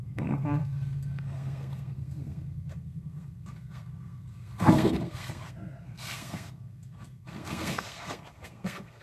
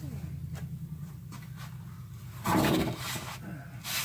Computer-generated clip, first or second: first